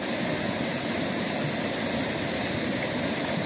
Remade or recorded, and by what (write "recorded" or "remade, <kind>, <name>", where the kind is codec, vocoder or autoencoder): recorded